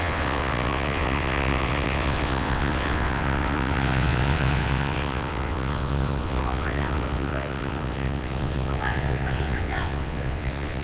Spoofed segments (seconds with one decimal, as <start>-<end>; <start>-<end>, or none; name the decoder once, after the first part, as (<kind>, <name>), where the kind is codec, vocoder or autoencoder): 0.0-10.8 (vocoder, WaveNeXt)